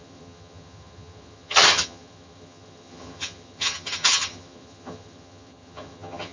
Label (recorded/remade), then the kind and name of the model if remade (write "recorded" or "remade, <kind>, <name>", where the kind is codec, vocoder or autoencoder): remade, vocoder, HiFi-GAN